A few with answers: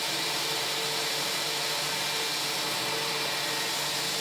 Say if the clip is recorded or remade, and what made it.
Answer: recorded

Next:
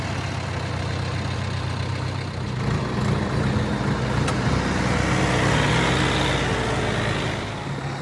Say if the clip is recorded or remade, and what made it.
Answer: recorded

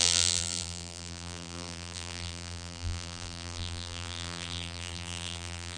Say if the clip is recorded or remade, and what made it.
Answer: remade, vocoder, BigVGAN v2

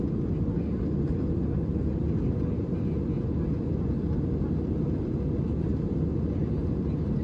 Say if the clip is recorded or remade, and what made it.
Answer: recorded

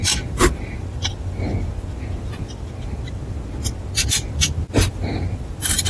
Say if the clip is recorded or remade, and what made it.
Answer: recorded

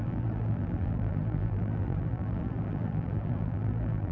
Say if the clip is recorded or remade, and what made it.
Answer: remade, vocoder, BigVGAN v2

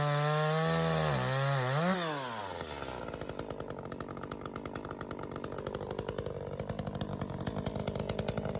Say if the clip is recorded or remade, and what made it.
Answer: recorded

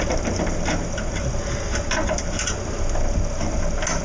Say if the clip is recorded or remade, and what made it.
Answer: recorded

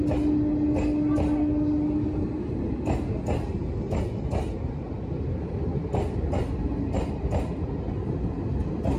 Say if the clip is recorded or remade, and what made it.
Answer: recorded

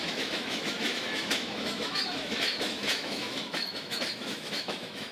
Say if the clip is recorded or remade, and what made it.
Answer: remade, autoencoder, DAC-VAE